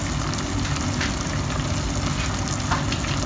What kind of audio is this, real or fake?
real